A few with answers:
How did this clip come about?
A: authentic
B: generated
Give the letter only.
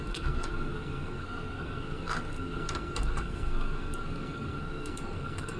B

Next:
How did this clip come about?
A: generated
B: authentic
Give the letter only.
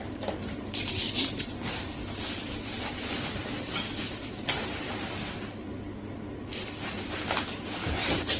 A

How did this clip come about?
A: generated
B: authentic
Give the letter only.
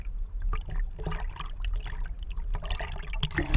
B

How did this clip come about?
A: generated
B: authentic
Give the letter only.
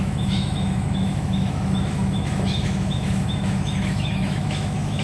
A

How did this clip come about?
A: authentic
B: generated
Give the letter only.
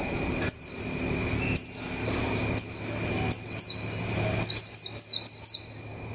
A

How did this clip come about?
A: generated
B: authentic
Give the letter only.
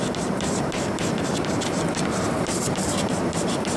A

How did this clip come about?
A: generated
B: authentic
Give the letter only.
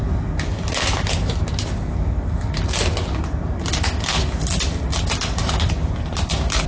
B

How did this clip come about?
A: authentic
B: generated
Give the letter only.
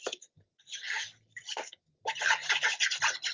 A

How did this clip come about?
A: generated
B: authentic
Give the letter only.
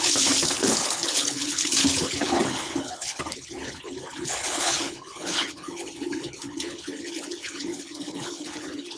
A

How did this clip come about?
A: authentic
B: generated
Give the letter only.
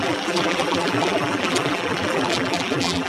B